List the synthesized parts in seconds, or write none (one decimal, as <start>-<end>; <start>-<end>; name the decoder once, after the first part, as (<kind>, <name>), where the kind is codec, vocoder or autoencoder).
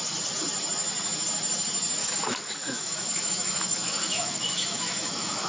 2.0-5.5 (autoencoder, DAC-VAE)